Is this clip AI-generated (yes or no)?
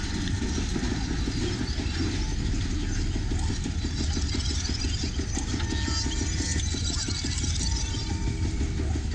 no